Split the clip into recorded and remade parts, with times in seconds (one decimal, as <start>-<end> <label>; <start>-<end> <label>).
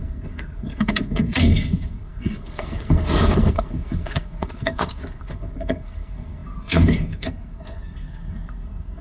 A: 0.0-9.0 remade